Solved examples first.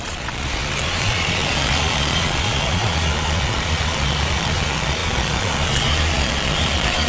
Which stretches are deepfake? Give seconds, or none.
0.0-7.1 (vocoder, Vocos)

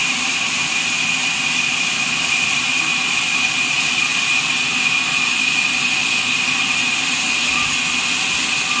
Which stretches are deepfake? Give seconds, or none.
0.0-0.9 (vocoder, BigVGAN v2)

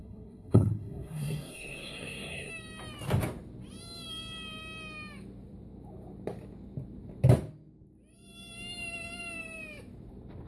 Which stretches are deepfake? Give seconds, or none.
0.0-2.5 (codec, SNAC)

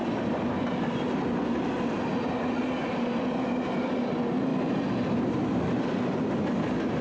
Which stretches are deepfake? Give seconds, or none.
none